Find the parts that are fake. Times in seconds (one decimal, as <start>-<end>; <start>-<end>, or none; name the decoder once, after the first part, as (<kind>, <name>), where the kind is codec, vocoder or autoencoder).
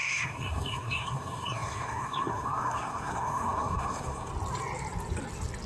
0.0-4.3 (codec, SNAC)